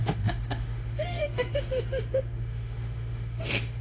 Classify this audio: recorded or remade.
remade